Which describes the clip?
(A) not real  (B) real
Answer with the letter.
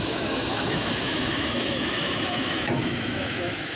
A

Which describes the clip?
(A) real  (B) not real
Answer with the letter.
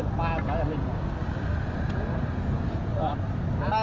A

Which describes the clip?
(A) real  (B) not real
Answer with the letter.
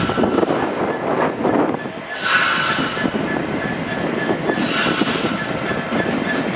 A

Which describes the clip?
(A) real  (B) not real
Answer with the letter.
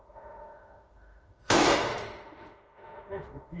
B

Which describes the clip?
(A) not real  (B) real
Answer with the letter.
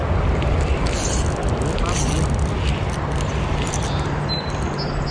B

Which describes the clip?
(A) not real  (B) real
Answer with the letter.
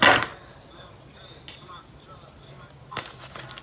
B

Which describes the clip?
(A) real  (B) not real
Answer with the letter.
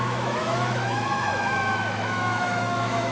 B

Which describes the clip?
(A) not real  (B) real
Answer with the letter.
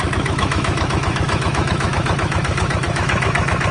A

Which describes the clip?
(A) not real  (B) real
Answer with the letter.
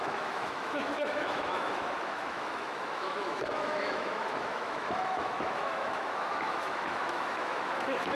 A